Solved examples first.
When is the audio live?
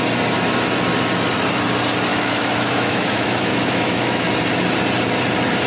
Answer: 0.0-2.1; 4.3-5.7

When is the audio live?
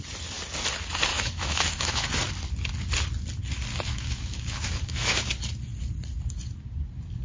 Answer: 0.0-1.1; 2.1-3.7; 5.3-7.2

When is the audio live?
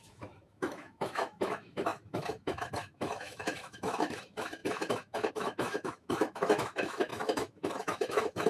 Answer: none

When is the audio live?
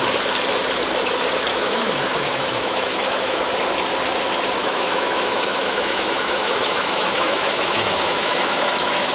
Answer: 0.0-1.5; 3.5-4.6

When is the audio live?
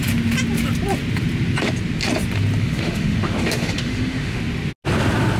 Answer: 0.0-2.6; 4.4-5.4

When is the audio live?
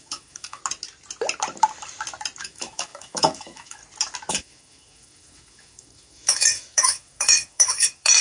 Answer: 0.6-2.4; 3.8-4.3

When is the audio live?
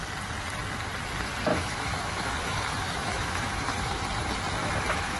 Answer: 0.0-1.5; 4.0-4.6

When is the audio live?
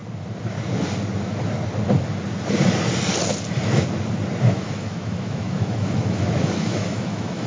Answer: 0.0-4.4